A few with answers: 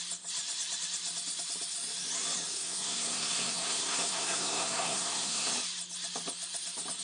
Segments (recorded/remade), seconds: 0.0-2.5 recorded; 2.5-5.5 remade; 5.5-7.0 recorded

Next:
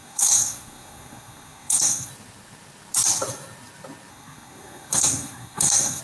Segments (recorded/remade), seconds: 0.0-2.1 remade; 2.1-4.1 recorded; 4.1-6.0 remade

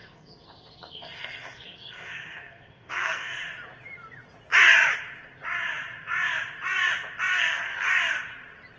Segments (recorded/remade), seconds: 0.0-3.3 remade; 3.3-7.3 recorded; 7.3-7.9 remade; 7.9-8.8 recorded

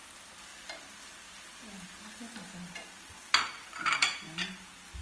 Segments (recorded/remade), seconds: 0.0-5.0 recorded

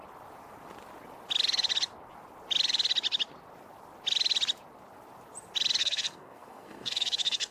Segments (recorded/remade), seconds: 0.0-5.8 recorded; 5.8-7.5 remade

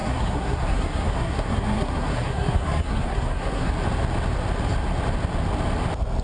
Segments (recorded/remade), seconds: 0.0-3.7 remade; 3.7-6.2 recorded

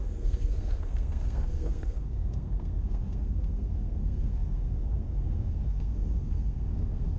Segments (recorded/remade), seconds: 0.0-7.2 remade

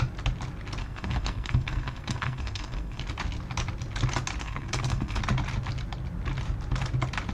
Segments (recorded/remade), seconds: 0.0-0.8 recorded; 0.8-3.0 remade; 3.0-4.4 recorded; 4.4-5.2 remade; 5.2-7.3 recorded